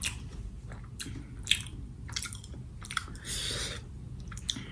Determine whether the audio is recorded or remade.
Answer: recorded